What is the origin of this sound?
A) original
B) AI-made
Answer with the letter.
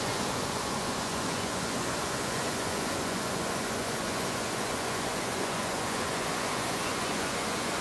B